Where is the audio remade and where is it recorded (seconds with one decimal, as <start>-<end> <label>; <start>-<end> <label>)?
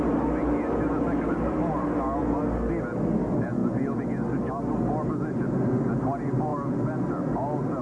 0.0-7.8 recorded